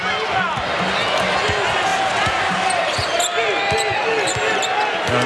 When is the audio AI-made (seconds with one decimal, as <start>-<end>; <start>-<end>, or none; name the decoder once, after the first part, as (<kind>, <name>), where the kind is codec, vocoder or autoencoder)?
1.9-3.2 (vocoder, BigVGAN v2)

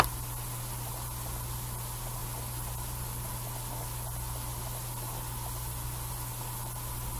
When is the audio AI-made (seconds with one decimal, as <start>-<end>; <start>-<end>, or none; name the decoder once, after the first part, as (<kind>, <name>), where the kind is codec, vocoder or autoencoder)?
none

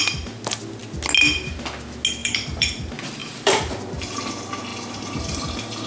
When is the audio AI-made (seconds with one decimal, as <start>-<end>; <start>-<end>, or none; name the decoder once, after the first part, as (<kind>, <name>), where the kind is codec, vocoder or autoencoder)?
2.2-2.8 (vocoder, BigVGAN v2); 3.2-4.3; 4.7-5.4

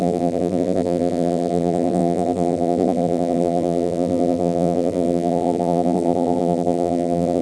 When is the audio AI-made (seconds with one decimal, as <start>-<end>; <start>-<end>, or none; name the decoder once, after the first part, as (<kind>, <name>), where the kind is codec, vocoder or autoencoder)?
0.0-7.4 (vocoder, BigVGAN v2)

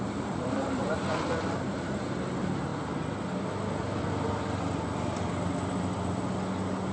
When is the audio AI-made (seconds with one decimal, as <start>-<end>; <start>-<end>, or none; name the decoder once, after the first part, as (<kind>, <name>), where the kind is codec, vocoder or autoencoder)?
0.0-2.7 (vocoder, BigVGAN v2)